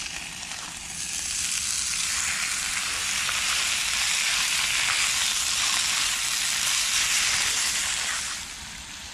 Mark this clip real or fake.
real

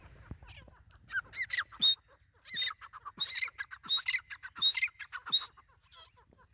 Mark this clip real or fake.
real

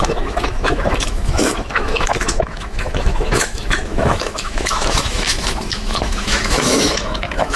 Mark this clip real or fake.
fake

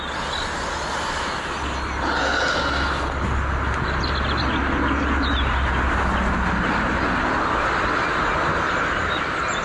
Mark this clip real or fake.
real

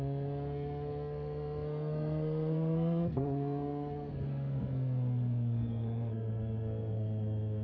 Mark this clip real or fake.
fake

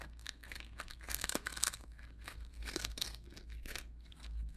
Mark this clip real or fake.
fake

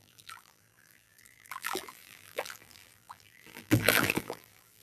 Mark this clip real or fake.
fake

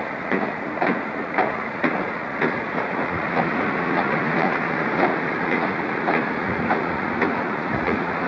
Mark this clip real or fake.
fake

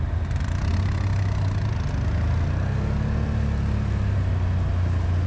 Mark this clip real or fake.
real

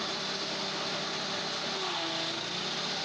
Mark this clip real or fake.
real